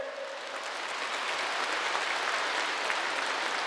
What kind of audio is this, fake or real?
real